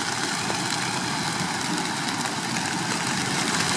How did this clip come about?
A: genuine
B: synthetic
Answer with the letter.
A